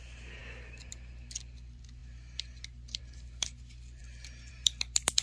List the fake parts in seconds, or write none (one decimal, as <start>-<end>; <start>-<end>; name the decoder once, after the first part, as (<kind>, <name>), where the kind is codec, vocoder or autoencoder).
none